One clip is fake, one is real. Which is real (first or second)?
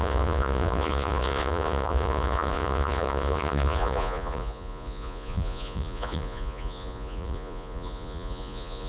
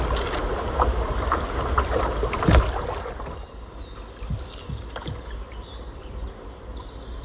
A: second